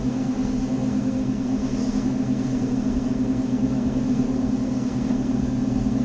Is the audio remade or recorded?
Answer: remade